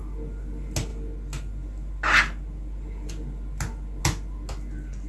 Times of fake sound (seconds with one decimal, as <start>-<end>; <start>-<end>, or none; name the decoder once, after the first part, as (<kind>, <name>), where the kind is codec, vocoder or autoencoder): none